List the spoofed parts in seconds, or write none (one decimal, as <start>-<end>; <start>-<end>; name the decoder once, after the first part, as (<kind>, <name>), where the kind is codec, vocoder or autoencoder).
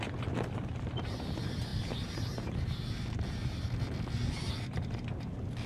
none